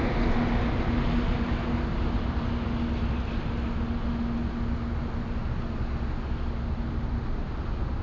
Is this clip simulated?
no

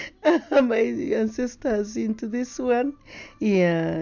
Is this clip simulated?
no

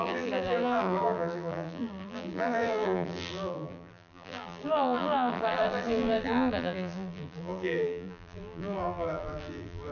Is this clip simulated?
yes